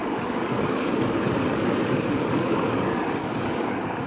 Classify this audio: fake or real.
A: fake